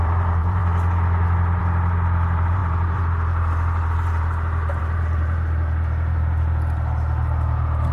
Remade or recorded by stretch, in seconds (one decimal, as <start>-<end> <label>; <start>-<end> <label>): 0.0-0.6 remade; 0.6-1.6 recorded; 1.6-7.9 remade